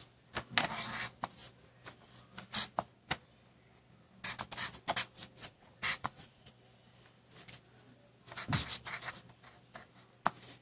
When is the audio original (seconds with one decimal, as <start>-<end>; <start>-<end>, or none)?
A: 0.0-5.4; 6.5-10.6